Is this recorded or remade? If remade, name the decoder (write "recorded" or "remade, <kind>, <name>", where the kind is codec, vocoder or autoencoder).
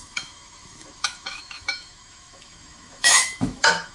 remade, autoencoder, DAC-VAE